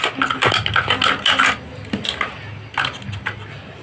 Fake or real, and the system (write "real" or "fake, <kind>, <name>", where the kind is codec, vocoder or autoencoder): real